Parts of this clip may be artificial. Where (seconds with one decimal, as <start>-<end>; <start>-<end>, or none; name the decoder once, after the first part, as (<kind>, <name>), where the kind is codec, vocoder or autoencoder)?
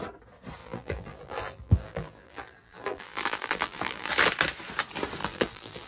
0.6-4.1 (vocoder, BigVGAN v2); 5.2-5.9